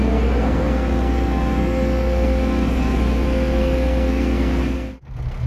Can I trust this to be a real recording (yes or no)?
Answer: no